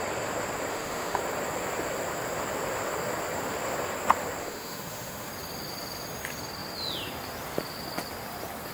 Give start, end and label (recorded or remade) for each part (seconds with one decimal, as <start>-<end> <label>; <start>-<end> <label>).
0.0-0.7 recorded; 0.7-1.2 remade; 1.2-4.4 recorded; 4.4-5.3 remade; 5.3-8.7 recorded

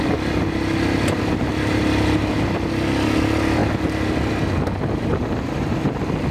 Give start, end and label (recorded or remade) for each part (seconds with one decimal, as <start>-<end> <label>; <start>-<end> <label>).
0.0-6.3 recorded